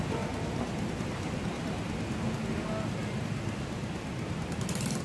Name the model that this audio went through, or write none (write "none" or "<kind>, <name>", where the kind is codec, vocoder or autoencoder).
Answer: none